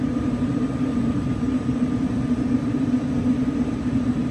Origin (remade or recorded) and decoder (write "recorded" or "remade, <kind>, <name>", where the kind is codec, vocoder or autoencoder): remade, vocoder, BigVGAN v2